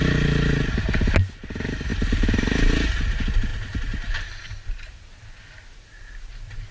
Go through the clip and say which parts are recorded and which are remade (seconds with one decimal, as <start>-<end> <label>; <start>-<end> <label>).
0.0-6.7 recorded